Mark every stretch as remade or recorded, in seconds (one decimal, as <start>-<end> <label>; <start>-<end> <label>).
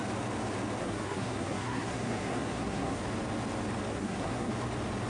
0.0-0.8 recorded; 0.8-3.0 remade; 3.0-3.9 recorded; 3.9-4.5 remade; 4.5-5.1 recorded